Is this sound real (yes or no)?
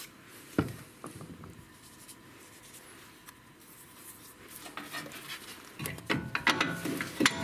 yes